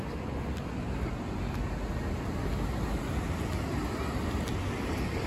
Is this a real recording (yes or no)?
yes